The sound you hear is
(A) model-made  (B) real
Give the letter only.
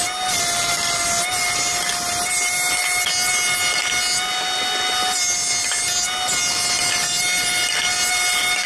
B